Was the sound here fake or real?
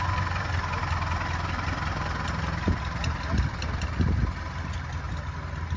real